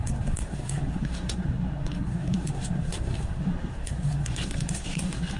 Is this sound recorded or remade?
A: remade